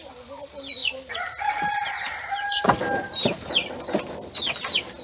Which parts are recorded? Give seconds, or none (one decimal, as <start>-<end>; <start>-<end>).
0.0-0.8; 3.8-5.0